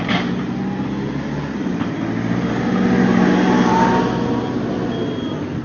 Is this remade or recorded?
recorded